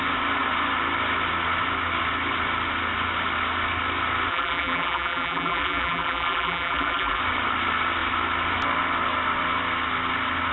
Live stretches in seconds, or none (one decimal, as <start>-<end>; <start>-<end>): 0.0-4.3; 7.2-10.5